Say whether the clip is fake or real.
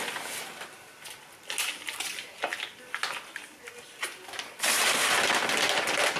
real